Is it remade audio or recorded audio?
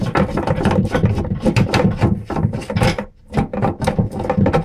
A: recorded